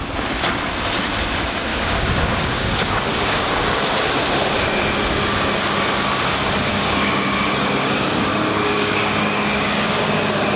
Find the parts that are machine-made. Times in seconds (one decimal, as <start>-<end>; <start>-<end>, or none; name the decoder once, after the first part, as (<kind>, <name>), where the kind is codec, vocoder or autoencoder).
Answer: 1.7-3.8 (codec, DAC); 6.7-10.2